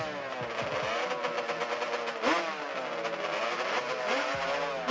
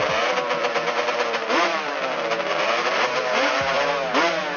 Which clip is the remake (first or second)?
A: second